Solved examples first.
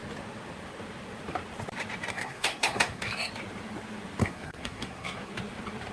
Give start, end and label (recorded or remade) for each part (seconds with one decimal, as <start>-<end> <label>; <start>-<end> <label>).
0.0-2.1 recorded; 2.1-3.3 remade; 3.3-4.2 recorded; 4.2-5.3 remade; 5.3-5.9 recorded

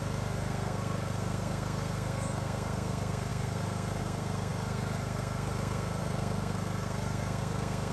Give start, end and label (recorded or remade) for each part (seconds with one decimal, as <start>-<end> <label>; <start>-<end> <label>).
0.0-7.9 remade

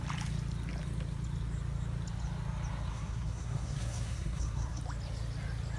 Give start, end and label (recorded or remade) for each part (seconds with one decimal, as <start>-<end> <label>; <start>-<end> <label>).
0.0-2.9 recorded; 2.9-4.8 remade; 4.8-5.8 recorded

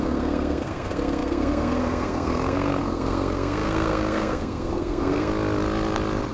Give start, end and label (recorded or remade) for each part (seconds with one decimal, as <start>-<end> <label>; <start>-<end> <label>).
0.0-5.3 remade; 5.3-6.3 recorded

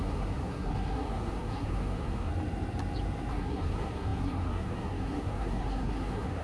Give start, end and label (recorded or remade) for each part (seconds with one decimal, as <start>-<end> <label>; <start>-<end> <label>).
0.0-2.3 remade; 2.3-3.3 recorded; 3.3-6.4 remade

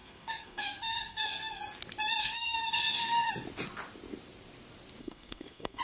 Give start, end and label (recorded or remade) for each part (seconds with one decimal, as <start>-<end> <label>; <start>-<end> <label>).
0.0-1.6 remade; 1.6-2.2 recorded; 2.2-3.3 remade; 3.3-5.0 recorded; 5.0-5.8 remade

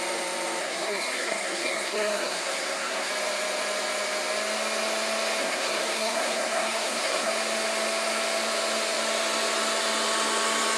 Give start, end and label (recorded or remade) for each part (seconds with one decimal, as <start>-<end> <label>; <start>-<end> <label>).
0.0-0.6 recorded; 0.6-3.1 remade; 3.1-5.4 recorded; 5.4-7.3 remade; 7.3-10.8 recorded

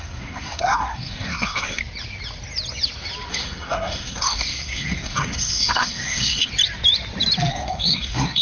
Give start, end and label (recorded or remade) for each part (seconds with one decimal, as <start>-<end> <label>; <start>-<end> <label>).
0.0-1.8 remade; 1.8-3.3 recorded; 3.3-6.5 remade; 6.5-7.5 recorded; 7.5-8.4 remade